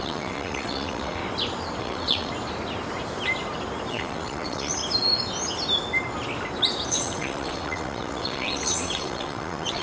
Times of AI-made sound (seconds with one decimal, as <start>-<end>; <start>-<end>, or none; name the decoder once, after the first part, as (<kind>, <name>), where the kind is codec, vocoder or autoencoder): 0.0-1.2 (vocoder, WaveNeXt); 1.8-2.3; 3.9-4.8; 6.9-9.8